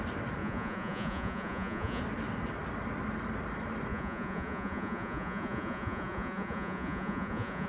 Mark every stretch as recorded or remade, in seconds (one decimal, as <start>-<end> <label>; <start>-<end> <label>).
0.0-0.4 recorded; 0.4-2.0 remade; 2.0-3.9 recorded; 3.9-7.7 remade